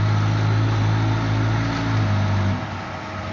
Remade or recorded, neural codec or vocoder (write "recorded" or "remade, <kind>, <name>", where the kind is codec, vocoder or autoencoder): recorded